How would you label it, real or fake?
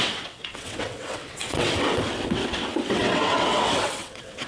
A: fake